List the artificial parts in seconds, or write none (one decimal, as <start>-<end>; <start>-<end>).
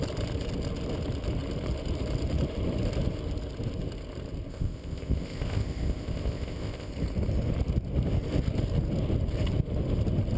4.5-6.9